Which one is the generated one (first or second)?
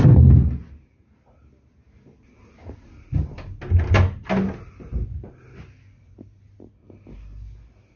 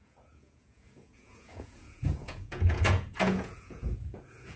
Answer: second